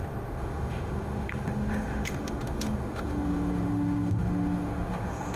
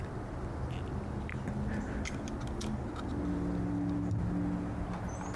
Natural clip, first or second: second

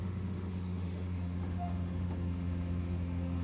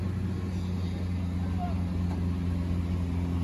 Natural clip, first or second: second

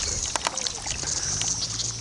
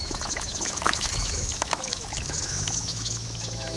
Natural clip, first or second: first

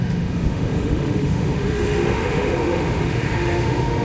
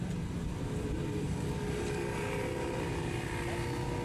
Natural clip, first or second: second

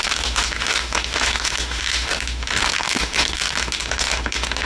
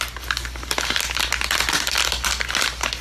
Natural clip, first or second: second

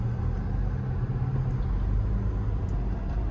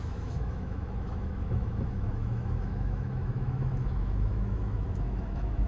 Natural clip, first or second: first